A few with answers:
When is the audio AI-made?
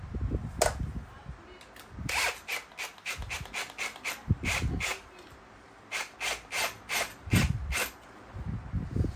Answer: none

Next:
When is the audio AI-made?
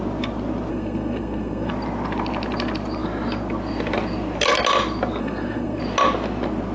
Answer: 0.7-1.7 (codec, SNAC); 5.2-5.8